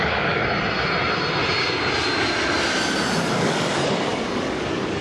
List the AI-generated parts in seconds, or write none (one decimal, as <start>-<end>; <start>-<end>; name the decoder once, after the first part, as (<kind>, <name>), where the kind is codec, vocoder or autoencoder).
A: 0.0-0.4 (codec, DAC); 3.3-5.0